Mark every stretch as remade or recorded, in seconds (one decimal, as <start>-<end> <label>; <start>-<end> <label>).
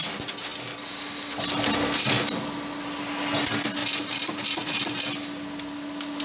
0.0-3.8 recorded; 3.8-5.0 remade; 5.0-6.2 recorded